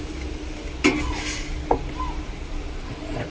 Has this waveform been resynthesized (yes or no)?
no